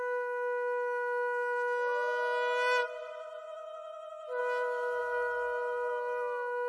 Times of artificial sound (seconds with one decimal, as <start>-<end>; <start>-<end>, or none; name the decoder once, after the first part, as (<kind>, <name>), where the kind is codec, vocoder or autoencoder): none

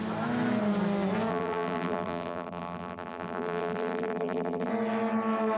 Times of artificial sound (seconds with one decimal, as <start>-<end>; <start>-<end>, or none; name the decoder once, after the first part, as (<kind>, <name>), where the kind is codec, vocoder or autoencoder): 1.3-4.7 (vocoder, BigVGAN v2)

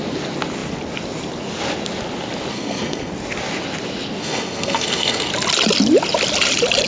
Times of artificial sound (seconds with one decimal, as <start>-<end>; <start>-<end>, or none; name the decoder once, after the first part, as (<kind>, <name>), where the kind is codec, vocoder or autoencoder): 2.5-3.1 (codec, SNAC); 4.2-5.3

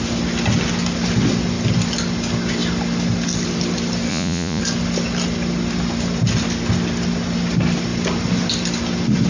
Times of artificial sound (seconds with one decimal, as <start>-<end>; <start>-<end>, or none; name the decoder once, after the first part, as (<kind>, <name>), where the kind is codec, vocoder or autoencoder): 4.1-4.6 (vocoder, Vocos)